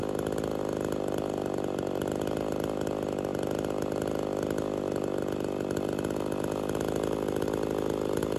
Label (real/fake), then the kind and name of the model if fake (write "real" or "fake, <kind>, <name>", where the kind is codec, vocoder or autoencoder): real